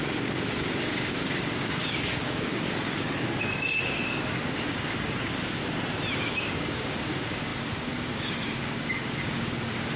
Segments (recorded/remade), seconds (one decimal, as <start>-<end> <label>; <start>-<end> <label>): 0.0-5.6 remade; 5.6-6.2 recorded; 6.2-10.0 remade